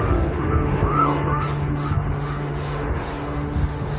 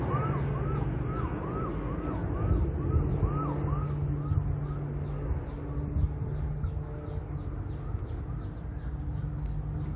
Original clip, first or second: second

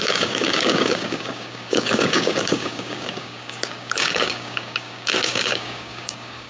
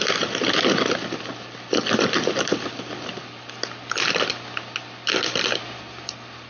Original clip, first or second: second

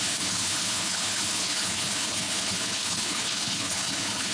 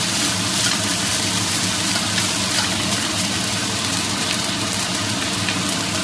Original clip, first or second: second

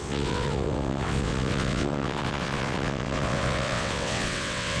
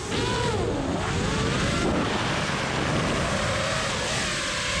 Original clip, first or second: second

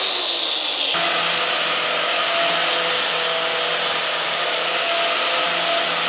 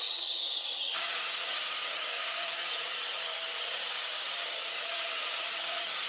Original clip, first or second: first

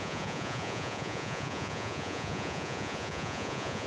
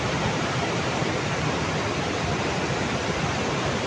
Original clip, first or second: second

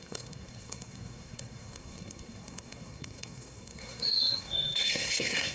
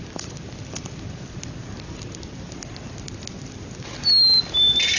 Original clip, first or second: second